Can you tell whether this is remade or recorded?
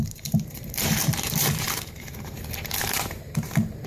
remade